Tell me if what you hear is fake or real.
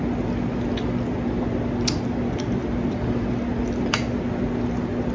real